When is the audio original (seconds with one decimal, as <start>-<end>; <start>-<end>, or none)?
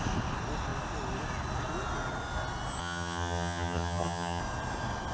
0.0-2.8; 4.4-5.1